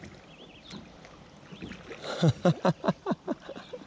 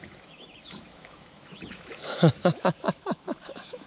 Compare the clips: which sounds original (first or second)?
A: first